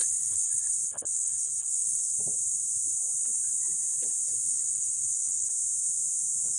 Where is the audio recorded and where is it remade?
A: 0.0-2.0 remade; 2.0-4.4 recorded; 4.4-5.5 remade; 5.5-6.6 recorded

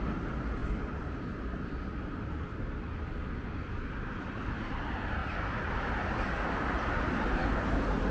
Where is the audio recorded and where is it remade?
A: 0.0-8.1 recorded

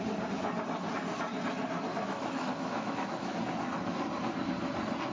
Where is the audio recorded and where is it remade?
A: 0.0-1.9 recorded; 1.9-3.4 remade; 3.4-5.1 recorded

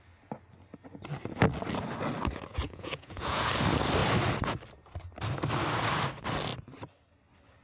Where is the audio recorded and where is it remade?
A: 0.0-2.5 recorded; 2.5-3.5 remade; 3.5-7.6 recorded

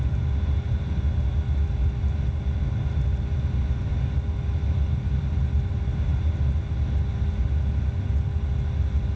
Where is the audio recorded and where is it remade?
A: 0.0-9.2 recorded

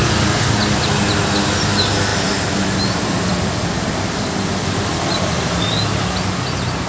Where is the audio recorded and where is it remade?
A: 0.0-0.9 remade; 0.9-2.1 recorded; 2.1-5.7 remade; 5.7-6.9 recorded

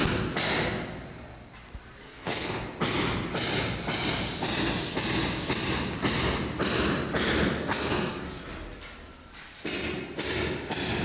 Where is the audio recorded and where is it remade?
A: 0.0-2.0 recorded; 2.0-2.6 remade; 2.6-7.7 recorded; 7.7-8.4 remade; 8.4-11.0 recorded

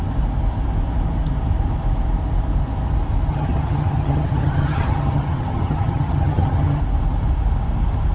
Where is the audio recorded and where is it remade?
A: 0.0-3.3 recorded; 3.3-6.8 remade; 6.8-8.1 recorded